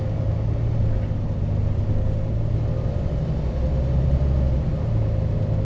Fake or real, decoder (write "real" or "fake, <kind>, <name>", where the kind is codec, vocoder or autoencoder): real